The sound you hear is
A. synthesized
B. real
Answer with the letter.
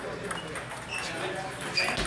A